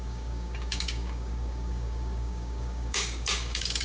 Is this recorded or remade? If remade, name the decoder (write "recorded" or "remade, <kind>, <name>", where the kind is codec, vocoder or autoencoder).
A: remade, codec, DAC